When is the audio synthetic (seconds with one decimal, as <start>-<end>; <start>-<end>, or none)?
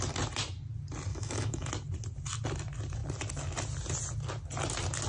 1.1-1.7